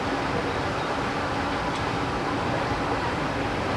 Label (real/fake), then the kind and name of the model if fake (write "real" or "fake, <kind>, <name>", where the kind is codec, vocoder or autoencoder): real